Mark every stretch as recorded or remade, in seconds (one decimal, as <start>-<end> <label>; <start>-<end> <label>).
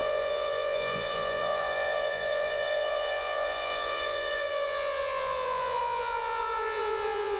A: 0.0-7.4 remade